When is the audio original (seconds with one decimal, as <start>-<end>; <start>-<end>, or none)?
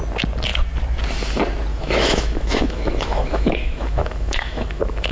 0.0-1.7